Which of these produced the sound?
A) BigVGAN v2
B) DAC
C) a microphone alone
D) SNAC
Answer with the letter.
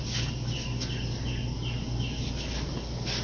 C